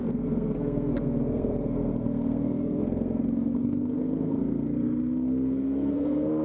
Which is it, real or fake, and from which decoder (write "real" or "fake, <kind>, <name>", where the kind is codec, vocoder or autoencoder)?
fake, codec, SNAC